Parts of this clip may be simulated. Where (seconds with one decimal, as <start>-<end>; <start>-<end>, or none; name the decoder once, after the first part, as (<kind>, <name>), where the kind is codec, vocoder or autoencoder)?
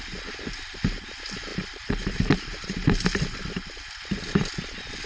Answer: none